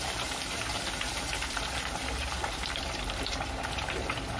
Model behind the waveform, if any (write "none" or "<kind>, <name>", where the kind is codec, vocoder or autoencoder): vocoder, BigVGAN v2